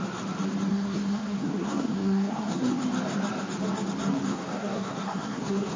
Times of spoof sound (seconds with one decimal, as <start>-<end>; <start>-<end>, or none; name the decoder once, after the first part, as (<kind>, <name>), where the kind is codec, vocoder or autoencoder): 0.7-2.7 (codec, SNAC); 4.3-5.8